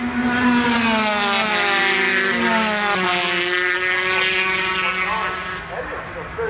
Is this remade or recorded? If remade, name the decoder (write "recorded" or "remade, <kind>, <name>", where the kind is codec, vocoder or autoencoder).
recorded